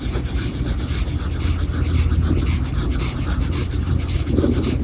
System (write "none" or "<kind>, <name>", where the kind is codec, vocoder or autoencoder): none